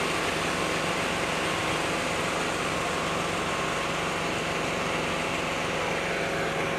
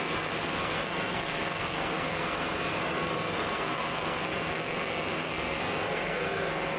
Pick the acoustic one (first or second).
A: first